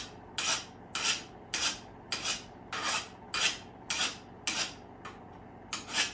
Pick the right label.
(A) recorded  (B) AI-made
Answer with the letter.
A